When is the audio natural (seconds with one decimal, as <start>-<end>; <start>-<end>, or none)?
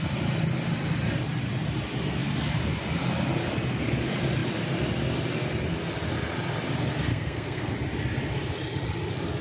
0.0-7.1; 7.7-9.4